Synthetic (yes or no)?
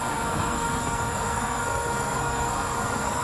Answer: yes